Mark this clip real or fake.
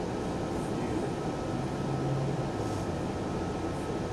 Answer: real